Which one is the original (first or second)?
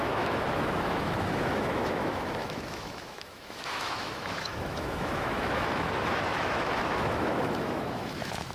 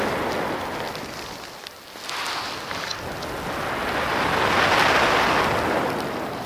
second